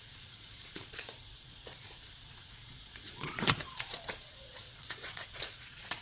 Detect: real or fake fake